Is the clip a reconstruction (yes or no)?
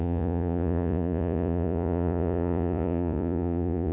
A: yes